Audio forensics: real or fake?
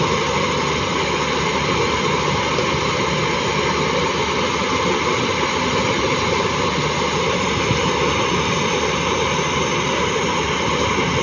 real